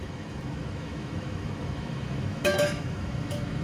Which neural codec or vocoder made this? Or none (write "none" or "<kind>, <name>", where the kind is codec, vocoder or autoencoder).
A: autoencoder, DAC-VAE